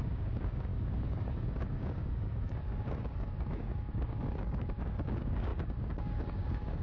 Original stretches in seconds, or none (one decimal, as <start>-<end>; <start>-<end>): none